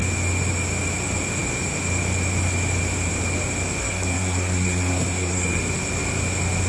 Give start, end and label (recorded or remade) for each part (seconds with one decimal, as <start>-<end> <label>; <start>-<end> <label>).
0.0-3.8 recorded; 3.8-5.6 remade; 5.6-6.7 recorded